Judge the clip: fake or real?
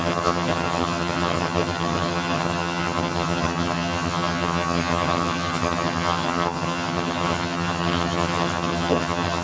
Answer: fake